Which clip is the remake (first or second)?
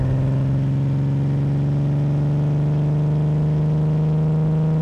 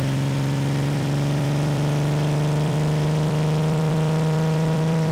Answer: second